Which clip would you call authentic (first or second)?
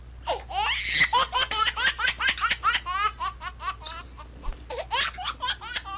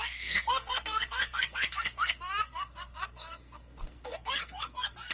first